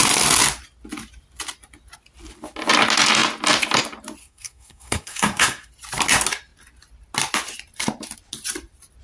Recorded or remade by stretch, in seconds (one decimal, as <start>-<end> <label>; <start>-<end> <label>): 0.0-4.2 recorded; 4.2-5.7 remade; 5.7-9.0 recorded